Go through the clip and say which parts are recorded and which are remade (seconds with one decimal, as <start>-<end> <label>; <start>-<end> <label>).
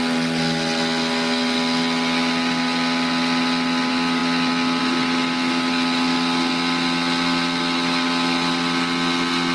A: 0.0-9.5 recorded